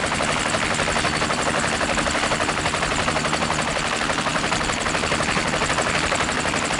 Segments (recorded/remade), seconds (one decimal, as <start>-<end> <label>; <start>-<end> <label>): 0.0-6.8 recorded